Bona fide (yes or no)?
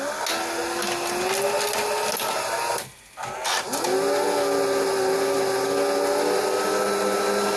yes